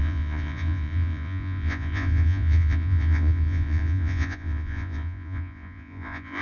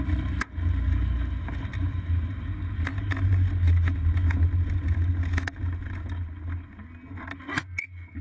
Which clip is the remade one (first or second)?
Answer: first